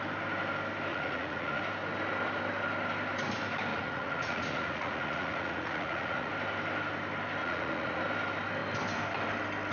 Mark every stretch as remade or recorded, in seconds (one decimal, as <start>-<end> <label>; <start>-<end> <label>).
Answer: 0.0-0.9 recorded; 0.9-1.6 remade; 1.6-3.7 recorded; 3.7-6.3 remade; 6.3-7.4 recorded; 7.4-8.0 remade; 8.0-9.7 recorded